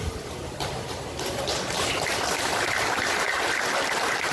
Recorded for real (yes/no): yes